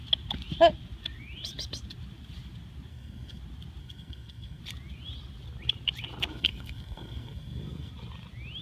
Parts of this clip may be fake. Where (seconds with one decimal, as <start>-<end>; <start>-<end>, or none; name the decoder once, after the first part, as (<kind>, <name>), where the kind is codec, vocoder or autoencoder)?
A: 2.9-3.4 (codec, SNAC); 3.8-4.6; 6.3-7.9